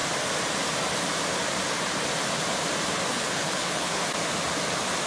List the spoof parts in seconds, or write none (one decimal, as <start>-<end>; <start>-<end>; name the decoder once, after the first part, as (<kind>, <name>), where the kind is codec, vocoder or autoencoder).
3.1-4.0 (codec, HILCodec)